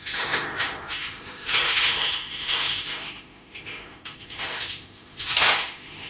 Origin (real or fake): fake